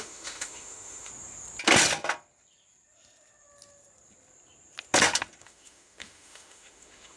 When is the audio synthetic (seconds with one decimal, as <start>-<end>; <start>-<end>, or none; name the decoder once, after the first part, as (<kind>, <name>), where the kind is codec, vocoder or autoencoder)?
0.0-1.1 (autoencoder, DAC-VAE); 5.4-7.2